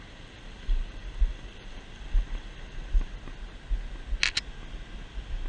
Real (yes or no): yes